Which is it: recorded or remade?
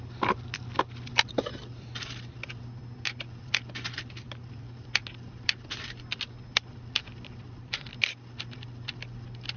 recorded